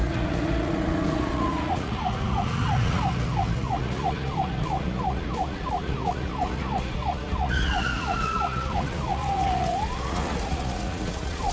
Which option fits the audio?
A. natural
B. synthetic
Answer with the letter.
B